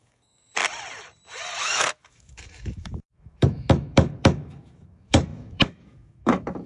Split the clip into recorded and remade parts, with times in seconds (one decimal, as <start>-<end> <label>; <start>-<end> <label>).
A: 0.0-0.6 remade; 0.6-1.6 recorded; 1.6-6.7 remade